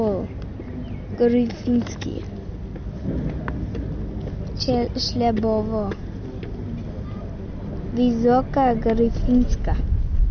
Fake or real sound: real